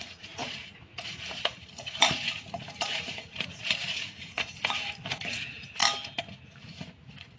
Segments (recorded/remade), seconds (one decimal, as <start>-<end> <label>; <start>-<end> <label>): 0.0-5.8 remade; 5.8-6.6 recorded; 6.6-7.4 remade